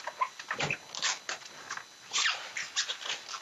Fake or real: real